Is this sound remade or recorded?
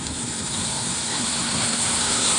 remade